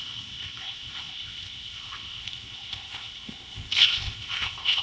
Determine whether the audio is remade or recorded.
remade